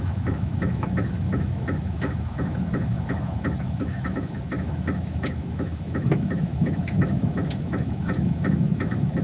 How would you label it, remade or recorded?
remade